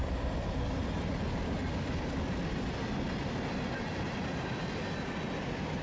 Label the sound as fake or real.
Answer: real